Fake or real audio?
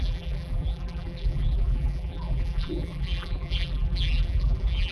fake